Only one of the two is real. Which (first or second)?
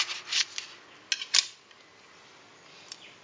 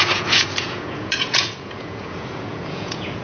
first